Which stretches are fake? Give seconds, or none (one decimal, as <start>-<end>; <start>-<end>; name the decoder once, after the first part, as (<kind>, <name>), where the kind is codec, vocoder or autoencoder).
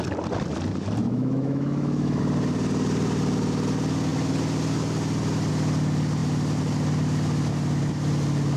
1.0-2.2 (autoencoder, DAC-VAE)